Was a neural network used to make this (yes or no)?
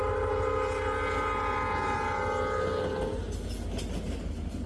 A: no